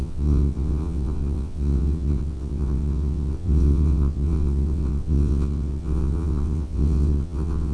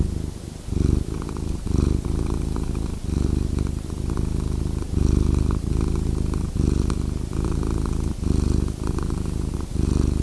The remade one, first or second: first